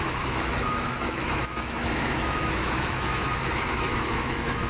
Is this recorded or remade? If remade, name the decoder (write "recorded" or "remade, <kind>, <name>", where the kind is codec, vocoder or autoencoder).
remade, autoencoder, DAC-VAE